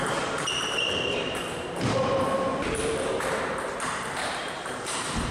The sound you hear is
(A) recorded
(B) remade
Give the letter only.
B